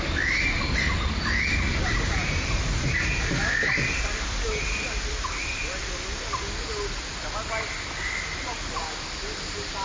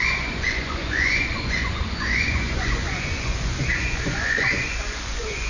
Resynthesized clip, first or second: second